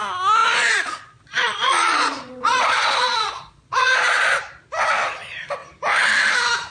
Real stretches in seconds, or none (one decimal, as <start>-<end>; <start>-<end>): 0.0-0.4; 4.4-6.7